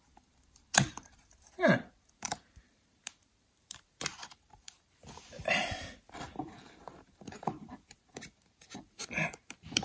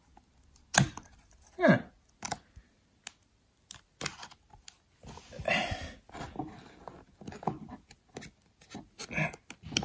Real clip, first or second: second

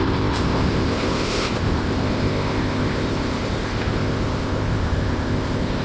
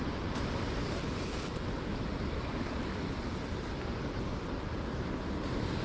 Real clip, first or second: second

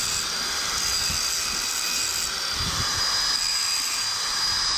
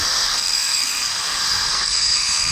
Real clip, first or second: first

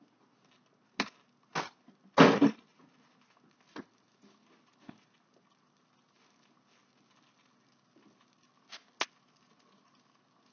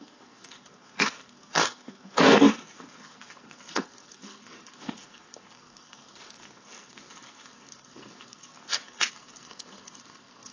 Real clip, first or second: first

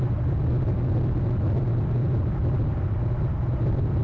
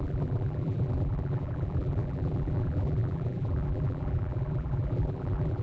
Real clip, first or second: first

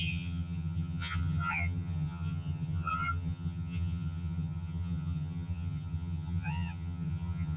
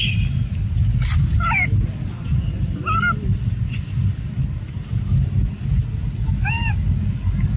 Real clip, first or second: second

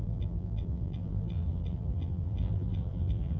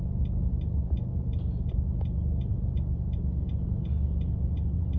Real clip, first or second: second